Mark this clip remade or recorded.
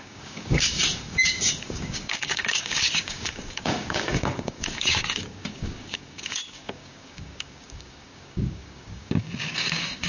remade